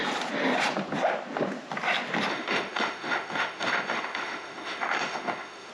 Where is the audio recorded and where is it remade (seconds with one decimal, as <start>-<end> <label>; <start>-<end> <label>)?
0.0-2.3 recorded; 2.3-5.7 remade